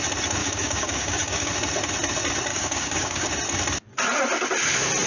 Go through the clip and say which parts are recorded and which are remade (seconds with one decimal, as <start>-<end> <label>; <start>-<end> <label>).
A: 0.0-0.4 recorded; 0.4-1.5 remade; 1.5-2.5 recorded; 2.5-3.3 remade; 3.3-5.1 recorded